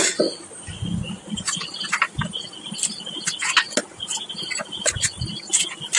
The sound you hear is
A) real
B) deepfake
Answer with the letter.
A